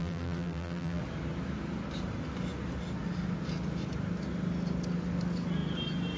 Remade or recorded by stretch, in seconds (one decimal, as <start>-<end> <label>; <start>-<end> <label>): 0.0-1.0 remade; 1.0-6.2 recorded